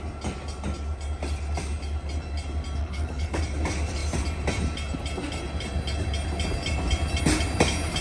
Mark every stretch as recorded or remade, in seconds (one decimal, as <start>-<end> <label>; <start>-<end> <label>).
0.0-2.8 recorded; 2.8-3.4 remade; 3.4-8.0 recorded